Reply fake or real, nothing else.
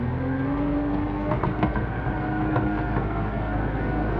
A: fake